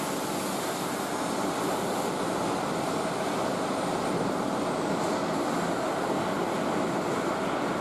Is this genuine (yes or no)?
yes